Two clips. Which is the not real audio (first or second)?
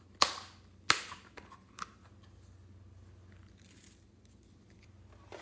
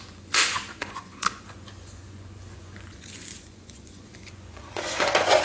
second